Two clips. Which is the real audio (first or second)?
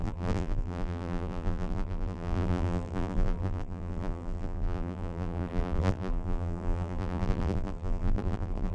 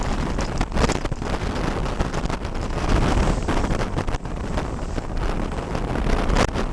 second